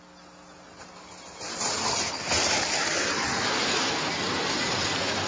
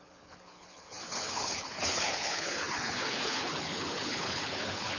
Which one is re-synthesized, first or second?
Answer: second